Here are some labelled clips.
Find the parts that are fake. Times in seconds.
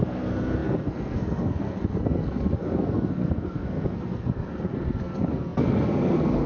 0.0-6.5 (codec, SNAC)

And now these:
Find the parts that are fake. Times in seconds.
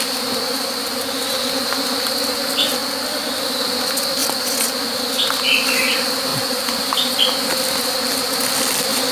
none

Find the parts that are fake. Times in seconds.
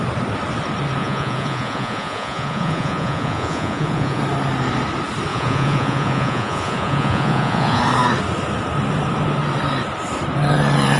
1.0-4.2 (vocoder, Vocos); 5.3-7.8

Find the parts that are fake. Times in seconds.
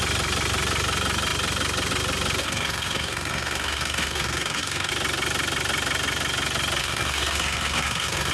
2.4-4.9 (codec, SNAC); 6.8-8.3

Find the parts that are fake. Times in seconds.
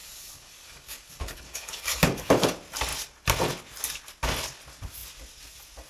0.0-2.3 (codec, DAC)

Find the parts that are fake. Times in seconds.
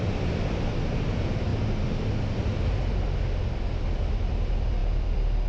0.0-1.5 (vocoder, BigVGAN v2); 3.3-5.5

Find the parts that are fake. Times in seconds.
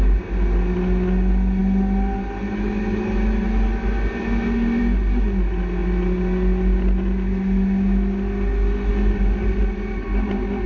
none